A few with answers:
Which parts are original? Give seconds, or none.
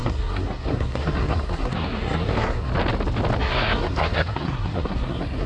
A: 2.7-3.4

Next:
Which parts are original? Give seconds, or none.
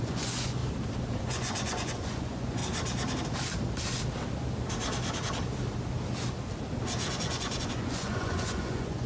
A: 0.6-1.2; 2.6-7.1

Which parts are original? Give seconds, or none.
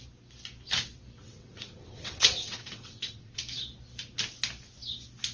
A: 0.0-1.2; 3.4-5.3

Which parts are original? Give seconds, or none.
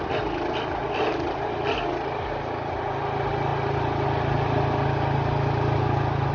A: 0.0-6.3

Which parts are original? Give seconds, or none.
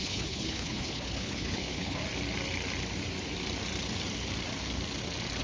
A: 2.0-5.4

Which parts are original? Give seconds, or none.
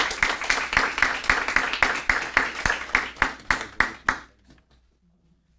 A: 0.0-5.6